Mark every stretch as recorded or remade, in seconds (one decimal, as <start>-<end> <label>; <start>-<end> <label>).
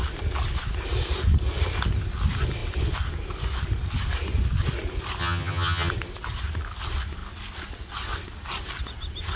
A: 0.0-5.2 recorded; 5.2-5.9 remade; 5.9-9.4 recorded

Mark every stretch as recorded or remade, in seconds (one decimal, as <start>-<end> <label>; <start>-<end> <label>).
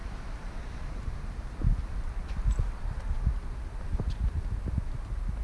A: 0.0-1.7 remade; 1.7-3.8 recorded; 3.8-5.4 remade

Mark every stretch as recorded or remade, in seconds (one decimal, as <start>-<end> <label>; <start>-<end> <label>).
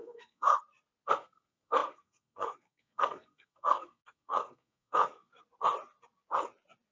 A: 0.0-0.5 remade; 0.5-1.1 recorded; 1.1-5.3 remade; 5.3-6.9 recorded